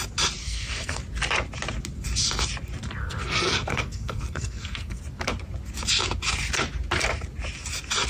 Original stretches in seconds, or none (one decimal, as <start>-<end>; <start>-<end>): 0.0-0.4; 1.0-3.0; 5.0-8.1